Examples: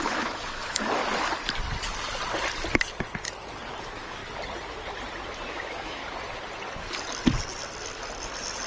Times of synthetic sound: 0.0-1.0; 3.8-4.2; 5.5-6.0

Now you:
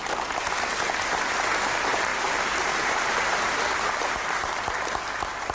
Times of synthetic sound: 2.1-4.6

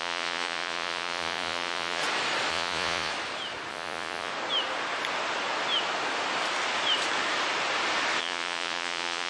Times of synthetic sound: 0.0-2.0; 2.5-3.1; 3.7-4.3; 8.2-9.3